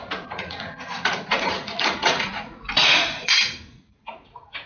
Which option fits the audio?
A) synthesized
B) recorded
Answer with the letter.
A